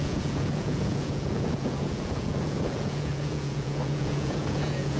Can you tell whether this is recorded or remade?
remade